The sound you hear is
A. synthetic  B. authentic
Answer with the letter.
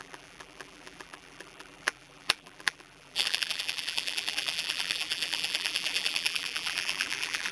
A